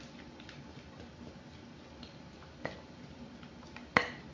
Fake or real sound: real